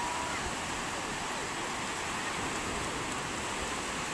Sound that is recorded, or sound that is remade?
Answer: recorded